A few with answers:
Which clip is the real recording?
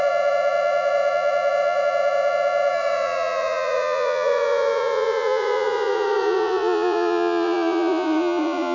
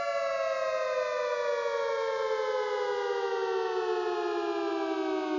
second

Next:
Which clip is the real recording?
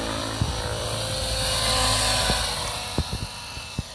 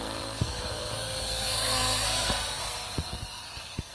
first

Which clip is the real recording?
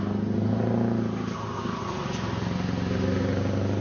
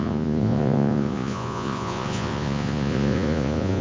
first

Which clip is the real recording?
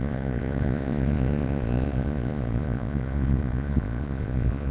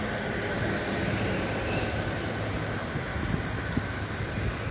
second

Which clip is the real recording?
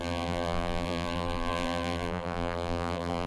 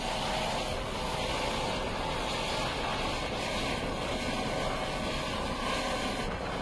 second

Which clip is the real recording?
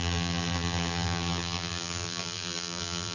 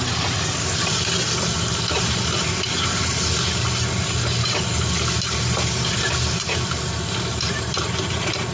second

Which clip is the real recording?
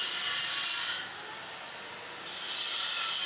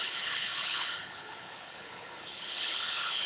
first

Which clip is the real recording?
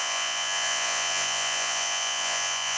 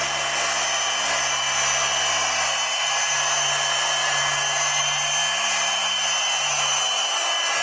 second